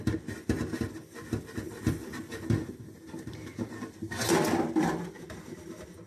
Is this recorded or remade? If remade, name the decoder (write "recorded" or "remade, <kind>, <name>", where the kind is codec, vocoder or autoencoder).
recorded